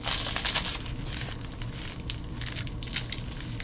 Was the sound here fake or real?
real